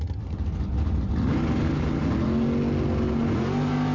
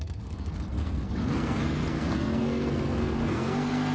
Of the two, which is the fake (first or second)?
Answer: second